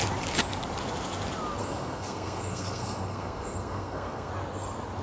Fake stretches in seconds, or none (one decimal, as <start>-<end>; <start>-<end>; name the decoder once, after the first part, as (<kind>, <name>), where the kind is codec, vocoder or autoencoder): 1.6-4.3 (codec, SNAC)